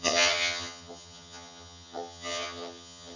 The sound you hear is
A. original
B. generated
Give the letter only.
B